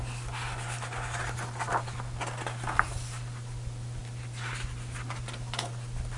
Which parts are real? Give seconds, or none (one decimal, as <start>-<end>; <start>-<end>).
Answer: 0.0-6.2